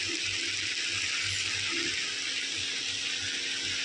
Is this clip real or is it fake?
real